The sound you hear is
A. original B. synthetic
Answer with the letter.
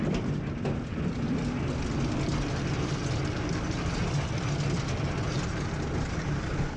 A